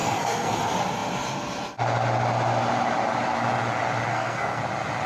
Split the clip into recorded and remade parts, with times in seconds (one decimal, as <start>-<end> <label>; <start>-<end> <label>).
0.0-0.6 remade; 0.6-4.1 recorded; 4.1-4.6 remade; 4.6-5.1 recorded